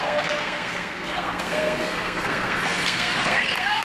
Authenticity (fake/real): fake